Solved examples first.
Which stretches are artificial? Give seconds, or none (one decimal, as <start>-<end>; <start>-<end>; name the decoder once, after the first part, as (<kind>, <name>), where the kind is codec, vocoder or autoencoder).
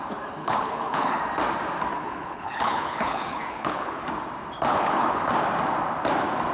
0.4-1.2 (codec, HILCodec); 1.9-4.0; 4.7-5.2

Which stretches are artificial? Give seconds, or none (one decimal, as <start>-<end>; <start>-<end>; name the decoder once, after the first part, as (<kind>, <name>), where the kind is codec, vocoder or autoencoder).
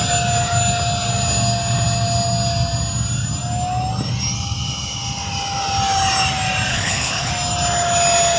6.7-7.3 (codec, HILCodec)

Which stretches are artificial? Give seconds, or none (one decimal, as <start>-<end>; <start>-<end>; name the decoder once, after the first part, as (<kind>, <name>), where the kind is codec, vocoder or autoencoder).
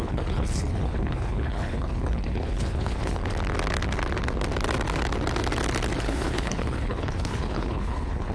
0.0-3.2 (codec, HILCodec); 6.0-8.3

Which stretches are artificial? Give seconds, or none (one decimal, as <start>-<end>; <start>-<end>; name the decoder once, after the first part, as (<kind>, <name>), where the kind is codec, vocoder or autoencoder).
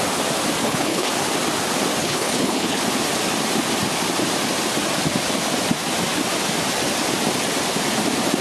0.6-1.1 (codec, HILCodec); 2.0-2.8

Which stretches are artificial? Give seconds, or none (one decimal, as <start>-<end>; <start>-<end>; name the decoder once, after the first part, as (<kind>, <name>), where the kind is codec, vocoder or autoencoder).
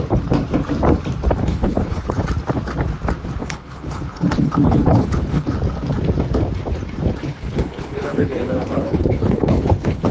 1.4-2.2 (codec, HILCodec); 3.4-5.5; 7.2-10.1